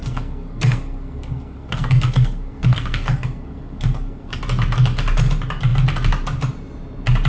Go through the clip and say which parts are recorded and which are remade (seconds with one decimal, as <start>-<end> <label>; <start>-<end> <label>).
0.0-4.4 remade; 4.4-7.3 recorded